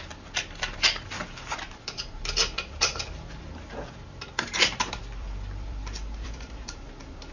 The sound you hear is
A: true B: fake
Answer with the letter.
B